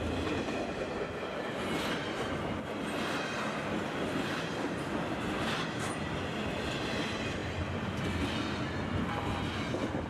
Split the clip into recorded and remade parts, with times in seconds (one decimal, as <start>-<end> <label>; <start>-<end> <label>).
0.0-10.1 recorded